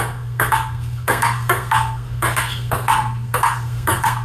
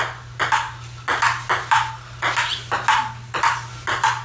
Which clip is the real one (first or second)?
second